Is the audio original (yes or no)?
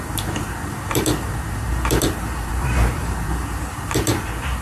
no